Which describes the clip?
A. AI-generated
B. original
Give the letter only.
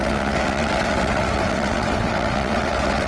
A